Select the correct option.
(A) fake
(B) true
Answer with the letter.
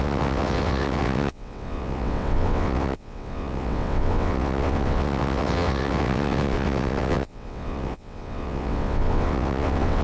A